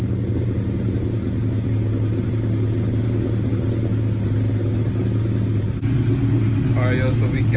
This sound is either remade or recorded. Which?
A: recorded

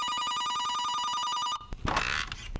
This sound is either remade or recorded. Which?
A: recorded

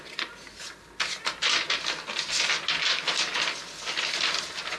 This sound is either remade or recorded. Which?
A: recorded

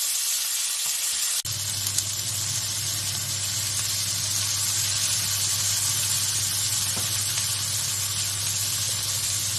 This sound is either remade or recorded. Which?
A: recorded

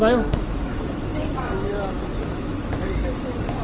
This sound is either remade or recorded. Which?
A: remade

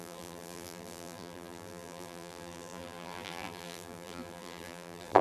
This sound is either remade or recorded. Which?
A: remade